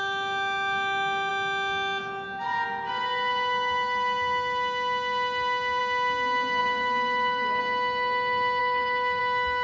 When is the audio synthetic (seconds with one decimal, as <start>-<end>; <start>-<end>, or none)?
6.6-7.6; 8.6-9.2